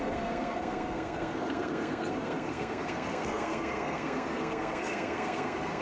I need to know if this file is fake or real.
fake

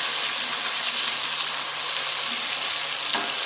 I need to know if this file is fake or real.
real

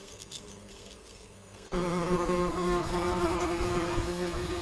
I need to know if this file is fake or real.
fake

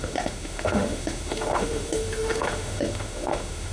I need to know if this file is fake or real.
fake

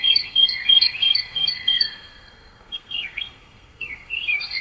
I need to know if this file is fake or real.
fake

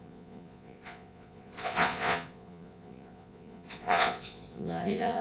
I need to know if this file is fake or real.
fake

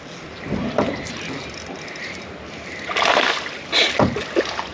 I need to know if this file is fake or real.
fake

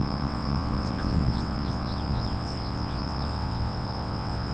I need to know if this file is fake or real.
fake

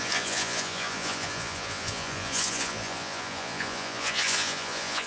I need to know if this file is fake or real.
fake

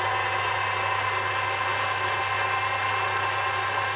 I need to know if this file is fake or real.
real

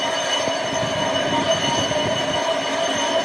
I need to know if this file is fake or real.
real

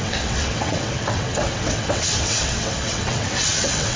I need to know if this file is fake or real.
fake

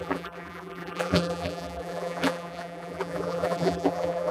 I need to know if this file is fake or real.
fake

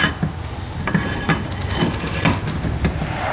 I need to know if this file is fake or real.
real